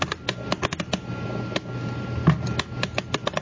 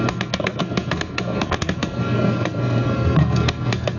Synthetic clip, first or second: second